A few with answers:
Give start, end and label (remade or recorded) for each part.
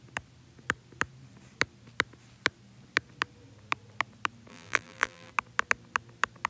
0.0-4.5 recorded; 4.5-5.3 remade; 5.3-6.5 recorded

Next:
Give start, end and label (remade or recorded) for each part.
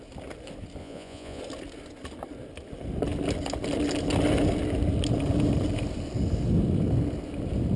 0.0-0.8 recorded; 0.8-1.4 remade; 1.4-7.8 recorded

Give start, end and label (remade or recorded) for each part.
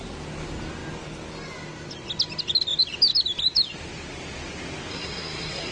0.0-4.9 recorded; 4.9-5.7 remade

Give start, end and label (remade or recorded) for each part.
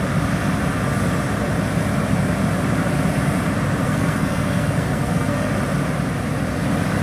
0.0-3.8 recorded; 3.8-5.5 remade; 5.5-7.0 recorded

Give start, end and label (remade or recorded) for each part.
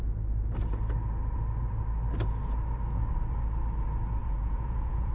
0.0-4.2 recorded; 4.2-5.1 remade